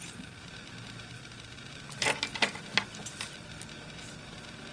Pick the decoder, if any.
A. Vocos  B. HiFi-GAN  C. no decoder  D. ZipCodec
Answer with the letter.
C